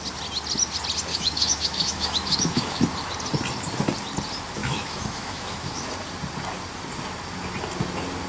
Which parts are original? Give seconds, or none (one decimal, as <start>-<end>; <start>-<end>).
0.0-1.1; 2.8-4.6; 5.9-8.3